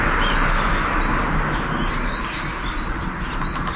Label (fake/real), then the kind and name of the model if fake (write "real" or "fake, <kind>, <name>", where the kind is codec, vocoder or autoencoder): real